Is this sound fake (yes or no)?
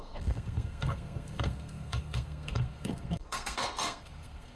yes